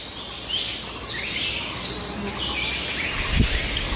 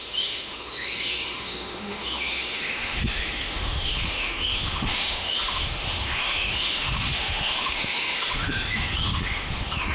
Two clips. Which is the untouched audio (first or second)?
first